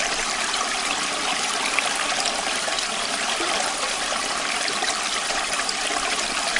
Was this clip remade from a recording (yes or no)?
yes